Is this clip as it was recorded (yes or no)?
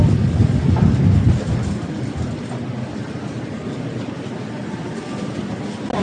yes